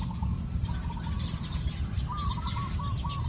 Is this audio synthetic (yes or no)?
no